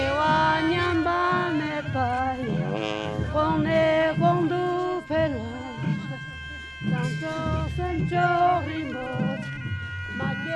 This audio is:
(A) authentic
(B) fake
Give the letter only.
A